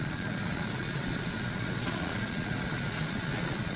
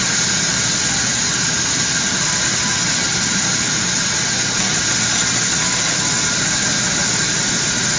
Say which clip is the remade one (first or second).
first